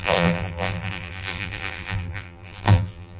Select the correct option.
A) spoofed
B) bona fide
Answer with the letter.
A